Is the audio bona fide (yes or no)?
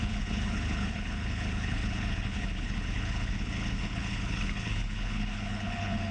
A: no